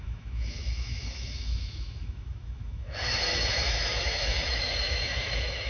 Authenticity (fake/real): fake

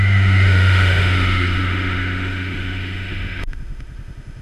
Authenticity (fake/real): fake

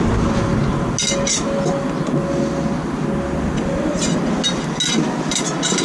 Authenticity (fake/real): real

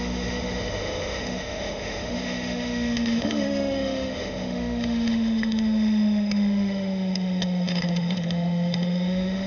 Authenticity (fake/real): fake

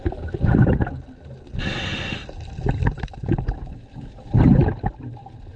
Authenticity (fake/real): real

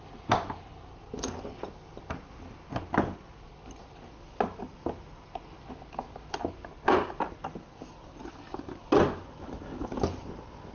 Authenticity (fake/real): real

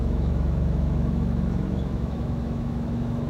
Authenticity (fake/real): fake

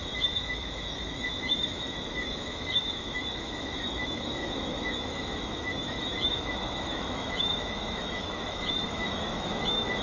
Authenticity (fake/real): fake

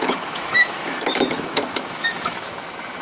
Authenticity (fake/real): fake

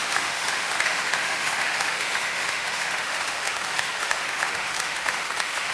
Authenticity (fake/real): fake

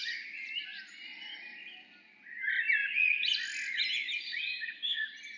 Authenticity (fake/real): real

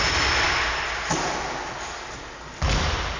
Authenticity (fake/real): real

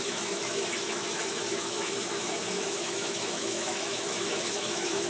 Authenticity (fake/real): fake